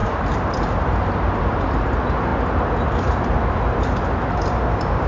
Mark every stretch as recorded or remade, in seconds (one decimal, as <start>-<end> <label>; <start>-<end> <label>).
0.0-2.3 remade; 2.3-2.9 recorded; 2.9-5.1 remade